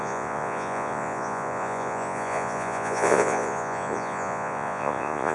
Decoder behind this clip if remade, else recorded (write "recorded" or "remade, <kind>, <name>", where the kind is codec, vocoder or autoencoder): remade, vocoder, Vocos